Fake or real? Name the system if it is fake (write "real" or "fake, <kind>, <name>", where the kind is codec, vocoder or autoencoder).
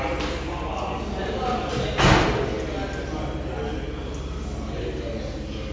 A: real